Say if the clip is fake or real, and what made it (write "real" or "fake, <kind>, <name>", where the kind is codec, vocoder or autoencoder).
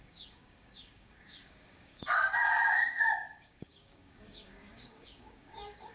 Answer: fake, codec, DAC